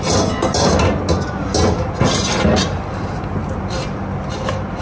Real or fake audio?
real